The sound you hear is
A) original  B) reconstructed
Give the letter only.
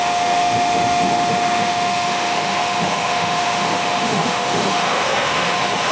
B